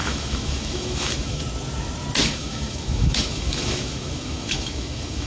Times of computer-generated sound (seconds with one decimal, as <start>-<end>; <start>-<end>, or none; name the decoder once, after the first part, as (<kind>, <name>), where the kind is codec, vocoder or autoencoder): 0.0-1.4 (autoencoder, DAC-VAE); 2.2-5.3